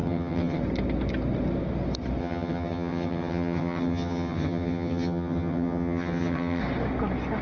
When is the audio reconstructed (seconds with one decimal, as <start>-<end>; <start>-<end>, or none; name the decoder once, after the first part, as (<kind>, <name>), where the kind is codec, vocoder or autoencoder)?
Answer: 0.0-0.6 (vocoder, HiFi-GAN); 2.2-6.6